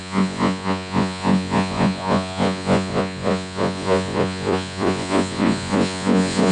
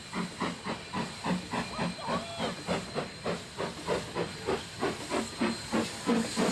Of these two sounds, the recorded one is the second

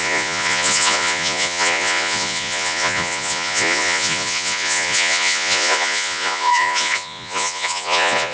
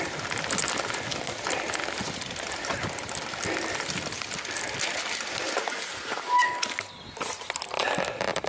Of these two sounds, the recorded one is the second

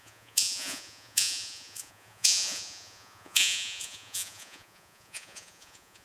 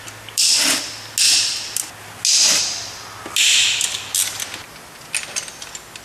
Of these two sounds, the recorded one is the second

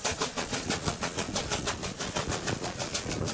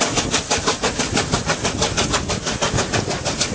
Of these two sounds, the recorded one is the second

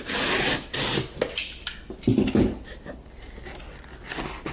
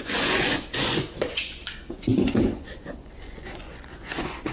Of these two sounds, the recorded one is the first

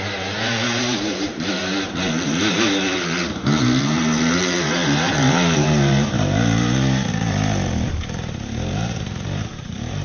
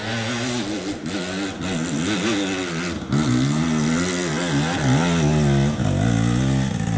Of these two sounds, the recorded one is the second